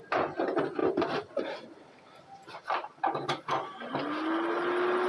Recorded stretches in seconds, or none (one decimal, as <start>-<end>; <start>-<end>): 0.0-0.8; 3.9-5.1